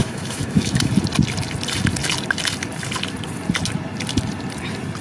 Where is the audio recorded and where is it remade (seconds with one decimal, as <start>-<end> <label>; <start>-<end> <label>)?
0.0-0.9 remade; 0.9-5.0 recorded